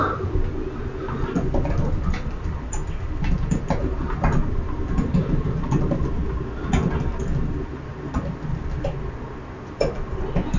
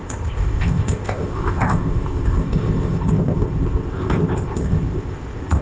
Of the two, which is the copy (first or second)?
second